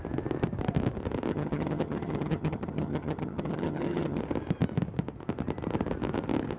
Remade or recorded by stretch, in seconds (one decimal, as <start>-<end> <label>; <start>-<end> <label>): 0.0-1.3 recorded; 1.3-4.2 remade; 4.2-6.6 recorded